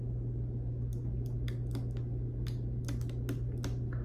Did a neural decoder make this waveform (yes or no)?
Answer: no